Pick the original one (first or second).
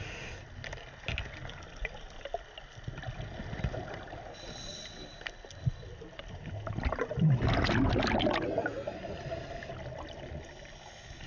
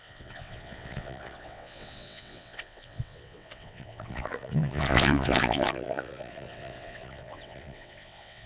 first